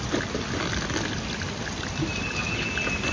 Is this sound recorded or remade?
recorded